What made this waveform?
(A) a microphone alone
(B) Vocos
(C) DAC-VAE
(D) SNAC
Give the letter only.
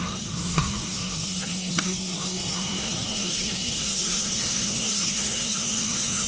D